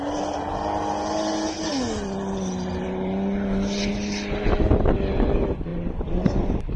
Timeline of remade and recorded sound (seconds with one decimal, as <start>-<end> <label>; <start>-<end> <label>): 0.0-5.7 recorded; 5.7-6.8 remade